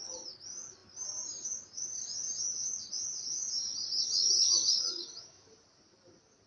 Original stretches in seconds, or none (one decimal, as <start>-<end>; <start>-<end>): 0.0-4.9; 5.5-6.5